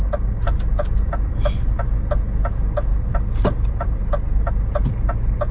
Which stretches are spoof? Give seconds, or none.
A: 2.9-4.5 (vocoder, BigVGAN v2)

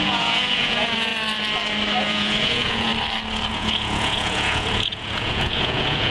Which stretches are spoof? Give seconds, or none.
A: 0.0-1.1 (vocoder, Vocos); 2.0-2.9; 3.5-6.1

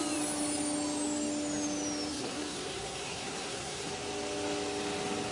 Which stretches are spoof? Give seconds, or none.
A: 2.1-3.9 (codec, SNAC)

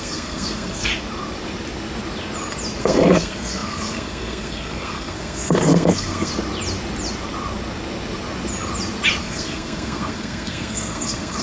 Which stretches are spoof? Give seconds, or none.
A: 0.0-0.9 (codec, SNAC); 2.8-6.3; 9.2-11.4

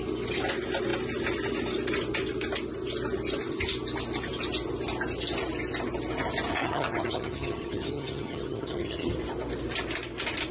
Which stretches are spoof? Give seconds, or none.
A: 6.6-9.1 (vocoder, HiFi-GAN)

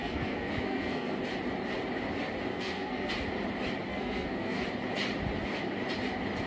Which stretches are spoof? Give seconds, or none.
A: 0.0-1.2 (codec, SNAC); 2.5-3.1; 3.9-4.6

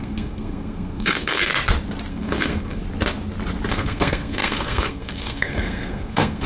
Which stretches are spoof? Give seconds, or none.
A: 0.0-1.5 (codec, SNAC); 2.1-2.8; 3.7-6.5

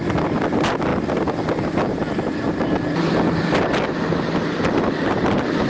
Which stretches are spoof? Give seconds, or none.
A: none